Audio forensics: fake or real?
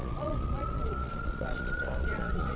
fake